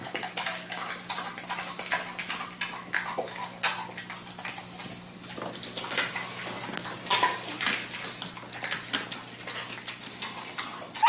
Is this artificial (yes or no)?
no